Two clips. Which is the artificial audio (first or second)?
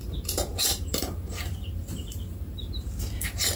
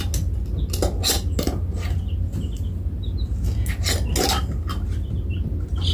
first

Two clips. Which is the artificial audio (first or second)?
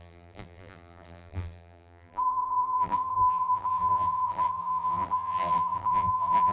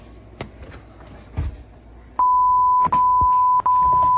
first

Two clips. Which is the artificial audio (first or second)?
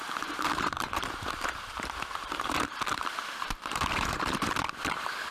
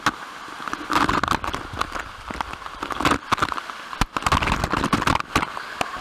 first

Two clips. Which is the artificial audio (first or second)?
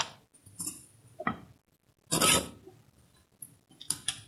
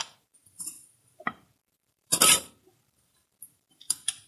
second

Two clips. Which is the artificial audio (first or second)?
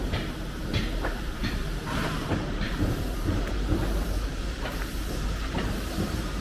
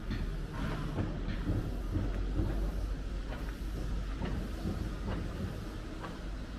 first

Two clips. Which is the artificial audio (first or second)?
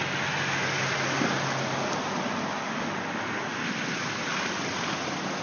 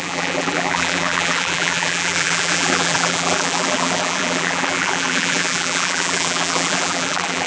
second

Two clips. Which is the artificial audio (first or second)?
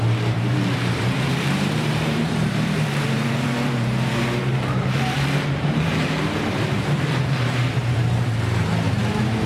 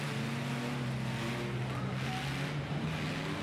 first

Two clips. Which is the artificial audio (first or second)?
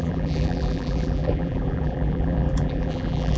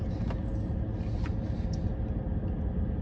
first